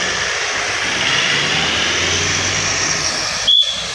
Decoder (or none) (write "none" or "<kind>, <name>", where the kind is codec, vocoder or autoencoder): none